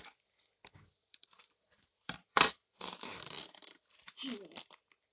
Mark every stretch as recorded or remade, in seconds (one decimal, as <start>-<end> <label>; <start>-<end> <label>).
0.0-1.0 recorded; 1.0-4.1 remade; 4.1-5.1 recorded